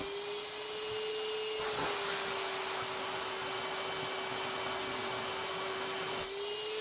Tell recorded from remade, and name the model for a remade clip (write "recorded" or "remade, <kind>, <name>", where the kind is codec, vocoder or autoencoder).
recorded